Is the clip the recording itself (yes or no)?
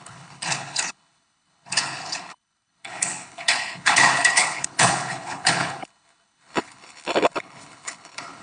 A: no